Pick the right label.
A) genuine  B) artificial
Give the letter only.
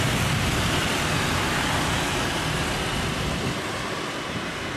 A